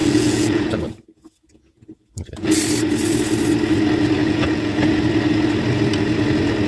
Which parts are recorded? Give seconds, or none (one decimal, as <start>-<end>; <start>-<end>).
2.5-4.2; 4.9-6.7